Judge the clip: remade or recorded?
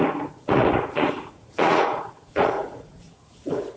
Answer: remade